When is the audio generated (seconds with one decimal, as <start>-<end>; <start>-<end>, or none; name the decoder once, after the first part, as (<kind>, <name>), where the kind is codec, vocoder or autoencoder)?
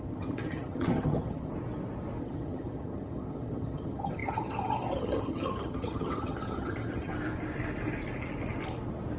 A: 0.0-1.5 (vocoder, HiFi-GAN); 2.2-7.1